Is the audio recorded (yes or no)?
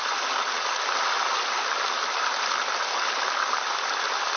no